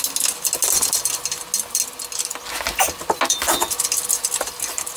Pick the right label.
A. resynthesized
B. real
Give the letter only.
B